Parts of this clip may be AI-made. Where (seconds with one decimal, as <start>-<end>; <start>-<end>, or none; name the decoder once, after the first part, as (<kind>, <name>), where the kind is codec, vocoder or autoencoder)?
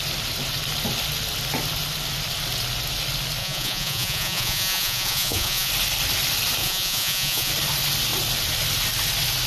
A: 3.4-5.7 (vocoder, Vocos); 6.6-7.5